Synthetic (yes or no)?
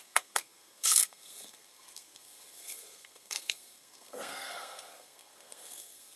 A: yes